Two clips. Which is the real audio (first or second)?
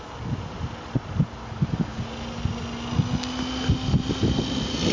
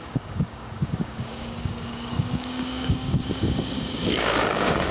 first